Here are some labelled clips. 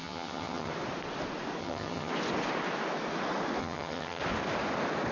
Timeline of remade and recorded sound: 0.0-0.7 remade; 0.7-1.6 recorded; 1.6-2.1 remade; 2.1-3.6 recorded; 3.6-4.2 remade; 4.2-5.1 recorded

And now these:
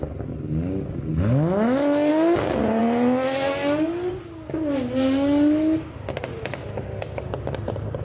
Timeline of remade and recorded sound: 0.0-1.1 recorded; 1.1-2.1 remade; 2.1-8.0 recorded

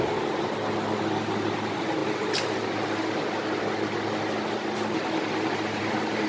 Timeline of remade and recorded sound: 0.0-6.3 recorded